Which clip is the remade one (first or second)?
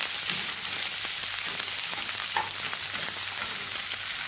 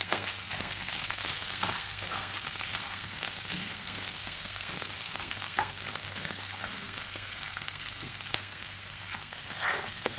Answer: second